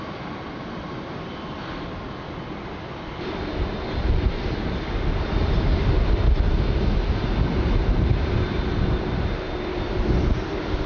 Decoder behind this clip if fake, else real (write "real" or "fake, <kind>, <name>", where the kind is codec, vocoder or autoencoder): real